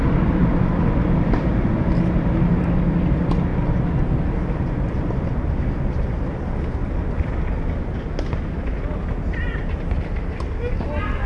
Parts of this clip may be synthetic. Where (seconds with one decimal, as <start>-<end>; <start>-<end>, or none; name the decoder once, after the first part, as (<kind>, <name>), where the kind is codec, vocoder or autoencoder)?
0.4-1.8 (vocoder, BigVGAN v2); 6.8-7.4